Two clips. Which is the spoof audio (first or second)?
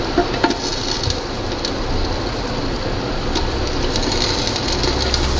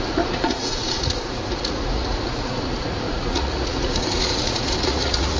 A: second